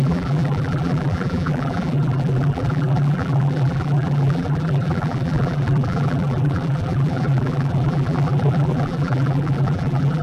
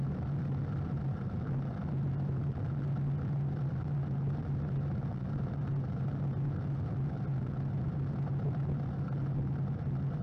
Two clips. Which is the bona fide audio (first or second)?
second